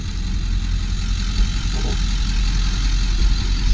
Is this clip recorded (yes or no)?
yes